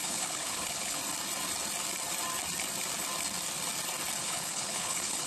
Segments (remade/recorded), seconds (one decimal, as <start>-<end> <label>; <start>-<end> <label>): 0.0-1.0 remade; 1.0-4.2 recorded; 4.2-5.3 remade

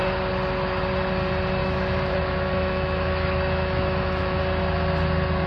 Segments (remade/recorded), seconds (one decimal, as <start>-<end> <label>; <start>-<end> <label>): 0.0-1.6 recorded; 1.6-4.4 remade; 4.4-5.5 recorded

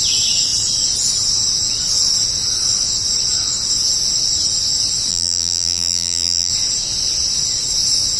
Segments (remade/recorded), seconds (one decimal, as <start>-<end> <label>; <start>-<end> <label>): 0.0-5.1 recorded; 5.1-6.5 remade; 6.5-8.2 recorded